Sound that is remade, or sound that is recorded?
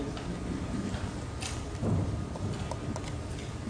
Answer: remade